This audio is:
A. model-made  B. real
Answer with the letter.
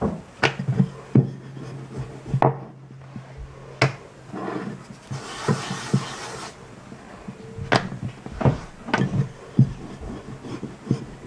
B